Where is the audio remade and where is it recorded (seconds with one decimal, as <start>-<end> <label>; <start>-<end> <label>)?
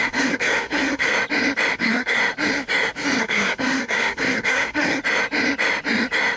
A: 0.0-1.1 remade; 1.1-1.7 recorded; 1.7-2.2 remade; 2.2-3.2 recorded; 3.2-5.0 remade; 5.0-6.4 recorded